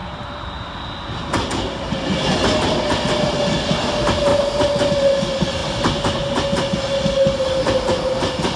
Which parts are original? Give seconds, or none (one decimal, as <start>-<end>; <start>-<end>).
0.5-4.3; 4.9-8.6